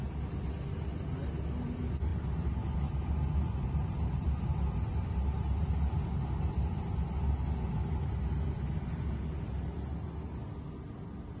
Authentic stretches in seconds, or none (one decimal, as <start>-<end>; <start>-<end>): 0.0-11.4